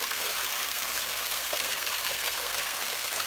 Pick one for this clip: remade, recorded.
remade